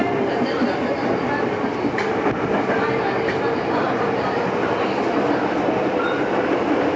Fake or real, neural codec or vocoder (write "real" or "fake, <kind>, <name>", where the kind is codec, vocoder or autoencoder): fake, vocoder, BigVGAN v2